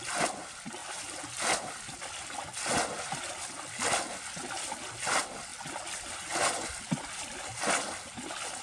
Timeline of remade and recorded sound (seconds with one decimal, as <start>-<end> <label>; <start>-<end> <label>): 0.0-8.6 recorded